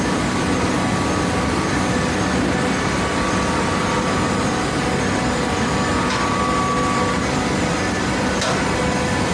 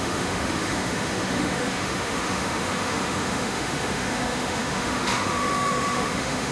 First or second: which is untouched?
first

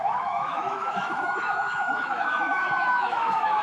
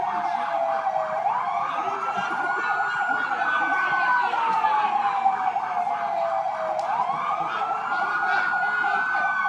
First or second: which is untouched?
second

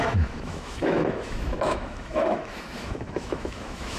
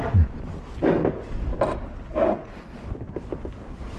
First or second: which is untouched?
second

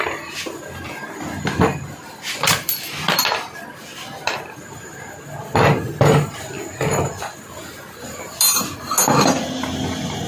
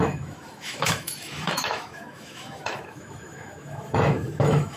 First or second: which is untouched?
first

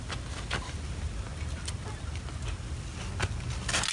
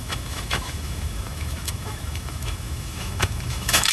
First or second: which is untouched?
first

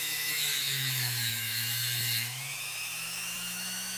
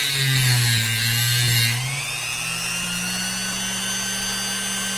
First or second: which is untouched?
second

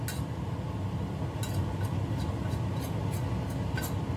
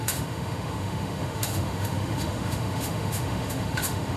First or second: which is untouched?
first